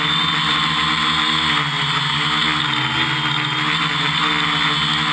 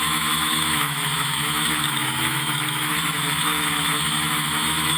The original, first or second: first